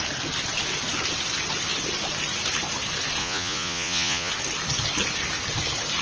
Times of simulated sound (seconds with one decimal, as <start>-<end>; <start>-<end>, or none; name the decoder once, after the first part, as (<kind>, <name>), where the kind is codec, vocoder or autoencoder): 3.2-4.3 (vocoder, Vocos)